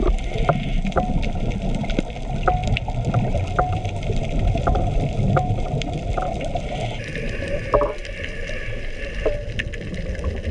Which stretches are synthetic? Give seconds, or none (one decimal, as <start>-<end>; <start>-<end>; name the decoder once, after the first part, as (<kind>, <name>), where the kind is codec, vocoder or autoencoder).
2.6-6.6 (vocoder, BigVGAN v2)